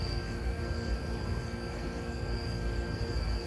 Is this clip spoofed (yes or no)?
yes